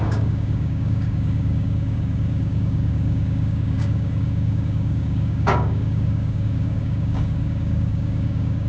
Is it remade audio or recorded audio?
remade